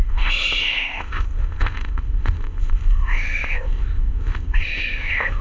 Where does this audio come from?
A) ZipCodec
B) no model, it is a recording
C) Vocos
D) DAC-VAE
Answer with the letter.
A